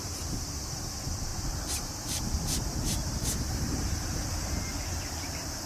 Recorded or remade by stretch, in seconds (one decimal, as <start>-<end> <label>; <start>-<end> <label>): 0.0-5.7 remade